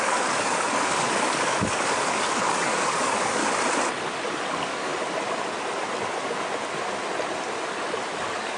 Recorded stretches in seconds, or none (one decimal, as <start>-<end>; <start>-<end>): 3.4-4.5; 4.9-8.2